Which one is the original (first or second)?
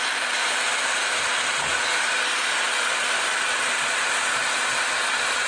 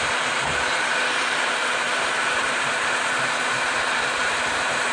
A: first